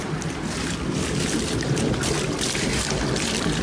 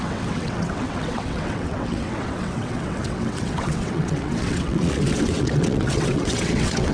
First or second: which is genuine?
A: first